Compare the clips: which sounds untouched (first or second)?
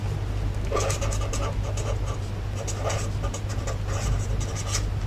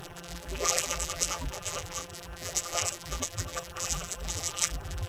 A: first